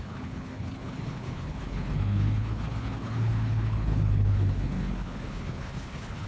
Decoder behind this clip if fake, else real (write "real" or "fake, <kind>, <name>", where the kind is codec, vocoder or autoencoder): fake, codec, HILCodec